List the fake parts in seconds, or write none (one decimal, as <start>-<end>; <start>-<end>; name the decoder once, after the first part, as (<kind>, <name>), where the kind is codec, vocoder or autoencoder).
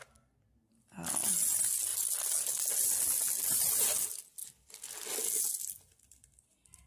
none